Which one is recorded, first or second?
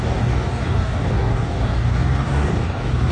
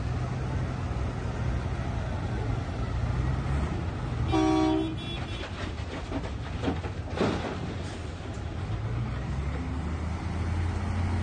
second